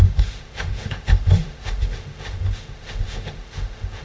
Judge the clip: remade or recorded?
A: remade